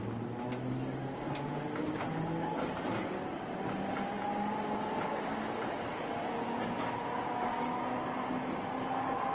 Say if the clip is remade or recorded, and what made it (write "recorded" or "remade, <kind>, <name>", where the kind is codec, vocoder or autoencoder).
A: recorded